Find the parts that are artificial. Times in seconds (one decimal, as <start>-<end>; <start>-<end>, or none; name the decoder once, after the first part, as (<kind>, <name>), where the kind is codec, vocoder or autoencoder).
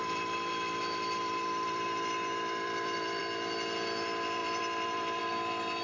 0.0-3.2 (vocoder, BigVGAN v2); 4.4-5.2